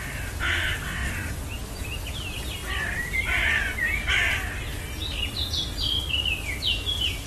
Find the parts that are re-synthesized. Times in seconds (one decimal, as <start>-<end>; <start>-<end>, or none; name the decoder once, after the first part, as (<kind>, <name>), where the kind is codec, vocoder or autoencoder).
none